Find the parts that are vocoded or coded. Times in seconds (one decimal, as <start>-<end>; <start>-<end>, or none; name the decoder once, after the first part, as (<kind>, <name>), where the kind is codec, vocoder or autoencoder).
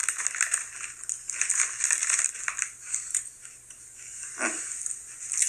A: none